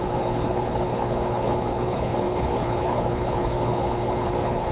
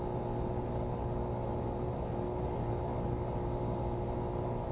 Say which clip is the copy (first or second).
first